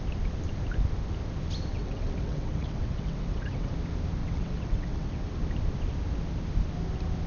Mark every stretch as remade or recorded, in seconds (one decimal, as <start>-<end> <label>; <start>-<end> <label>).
0.0-1.7 recorded; 1.7-3.7 remade; 3.7-4.2 recorded; 4.2-5.3 remade; 5.3-7.3 recorded